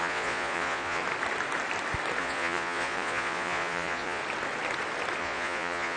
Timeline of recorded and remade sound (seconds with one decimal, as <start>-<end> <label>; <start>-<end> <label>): 0.0-1.0 remade; 1.0-2.2 recorded; 2.2-4.2 remade; 4.2-5.2 recorded; 5.2-6.0 remade

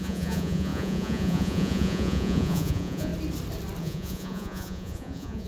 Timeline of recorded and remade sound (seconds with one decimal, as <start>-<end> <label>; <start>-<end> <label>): 0.0-3.1 remade; 3.1-3.8 recorded; 3.8-5.5 remade